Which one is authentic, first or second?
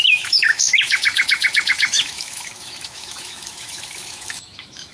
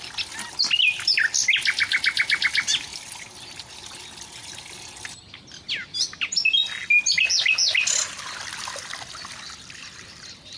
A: second